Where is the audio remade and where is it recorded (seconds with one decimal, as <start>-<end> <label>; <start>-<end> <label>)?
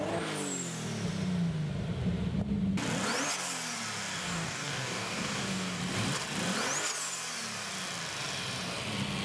0.0-4.2 recorded; 4.2-5.8 remade; 5.8-9.2 recorded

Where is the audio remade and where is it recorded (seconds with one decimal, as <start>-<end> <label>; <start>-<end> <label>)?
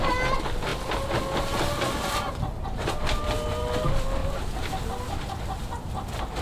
0.0-6.4 recorded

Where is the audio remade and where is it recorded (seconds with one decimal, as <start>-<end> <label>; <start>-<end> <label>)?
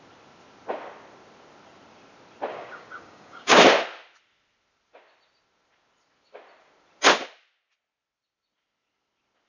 0.0-2.5 recorded; 2.5-3.6 remade; 3.6-9.5 recorded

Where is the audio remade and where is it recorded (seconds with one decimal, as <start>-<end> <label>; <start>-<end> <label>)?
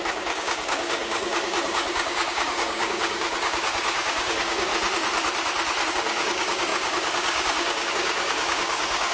0.0-4.7 remade; 4.7-5.9 recorded; 5.9-9.1 remade